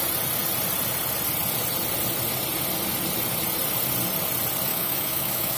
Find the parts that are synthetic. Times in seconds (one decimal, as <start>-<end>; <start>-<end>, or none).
4.7-5.6